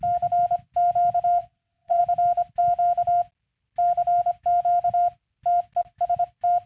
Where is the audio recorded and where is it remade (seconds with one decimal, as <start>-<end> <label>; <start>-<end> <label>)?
0.0-1.4 recorded; 1.4-2.0 remade; 2.0-6.7 recorded